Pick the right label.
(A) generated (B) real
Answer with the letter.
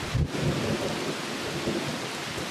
B